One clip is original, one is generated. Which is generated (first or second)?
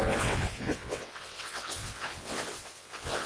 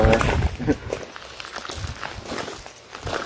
first